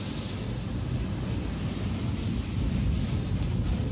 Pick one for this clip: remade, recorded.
recorded